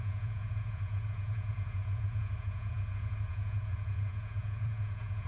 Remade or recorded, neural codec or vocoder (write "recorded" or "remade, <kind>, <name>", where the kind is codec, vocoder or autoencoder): remade, vocoder, Vocos